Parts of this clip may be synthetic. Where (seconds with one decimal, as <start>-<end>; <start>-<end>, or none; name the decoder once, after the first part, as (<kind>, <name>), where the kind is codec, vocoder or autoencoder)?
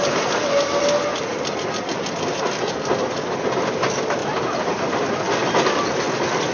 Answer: 1.1-2.7 (vocoder, BigVGAN v2)